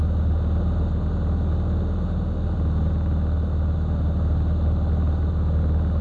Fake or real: real